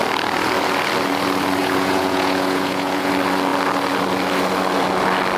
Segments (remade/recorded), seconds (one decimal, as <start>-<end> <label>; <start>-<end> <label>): 0.0-1.6 recorded; 1.6-3.1 remade; 3.1-5.4 recorded